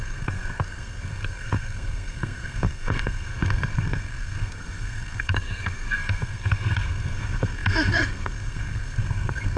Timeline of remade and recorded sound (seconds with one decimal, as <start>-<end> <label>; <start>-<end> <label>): 0.0-9.6 remade